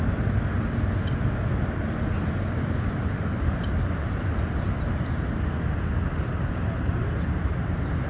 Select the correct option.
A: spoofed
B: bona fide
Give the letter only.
B